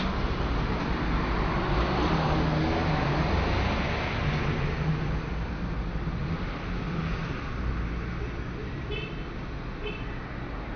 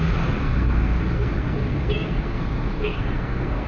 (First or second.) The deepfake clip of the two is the second